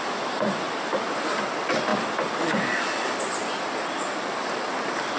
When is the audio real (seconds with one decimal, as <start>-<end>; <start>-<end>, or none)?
0.0-5.2